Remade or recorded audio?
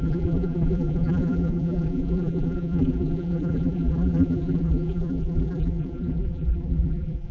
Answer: remade